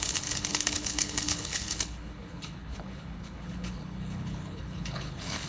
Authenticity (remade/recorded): remade